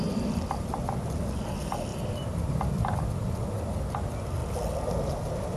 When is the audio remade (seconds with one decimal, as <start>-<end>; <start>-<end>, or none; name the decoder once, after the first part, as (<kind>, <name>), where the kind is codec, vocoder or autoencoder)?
1.9-3.0 (vocoder, BigVGAN v2)